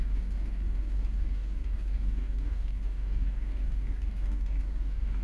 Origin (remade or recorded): remade